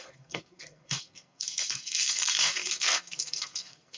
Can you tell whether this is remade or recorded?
remade